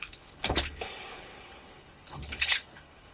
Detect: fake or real fake